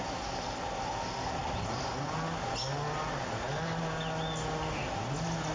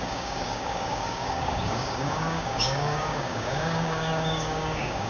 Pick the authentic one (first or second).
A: first